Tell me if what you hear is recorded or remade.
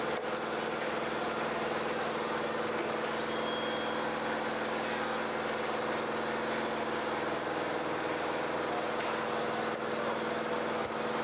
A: recorded